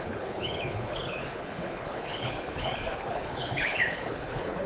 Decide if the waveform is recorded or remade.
remade